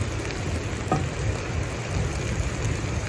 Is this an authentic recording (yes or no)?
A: yes